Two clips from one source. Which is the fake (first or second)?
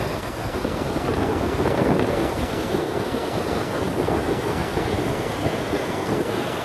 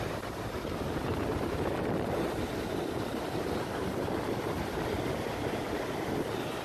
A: first